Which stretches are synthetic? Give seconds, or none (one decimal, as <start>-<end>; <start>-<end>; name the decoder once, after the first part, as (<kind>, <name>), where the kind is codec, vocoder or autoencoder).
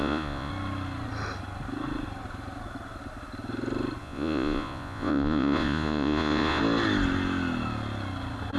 0.0-0.5 (vocoder, Vocos); 4.0-6.6